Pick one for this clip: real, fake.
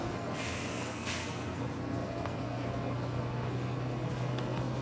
fake